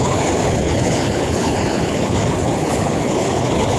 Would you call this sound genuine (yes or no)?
no